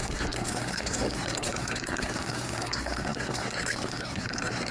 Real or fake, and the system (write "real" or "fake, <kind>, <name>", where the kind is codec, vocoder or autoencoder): fake, codec, SNAC